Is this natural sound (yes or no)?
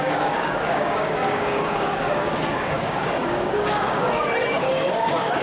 no